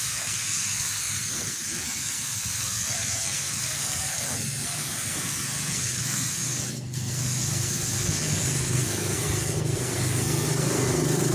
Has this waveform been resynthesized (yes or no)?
yes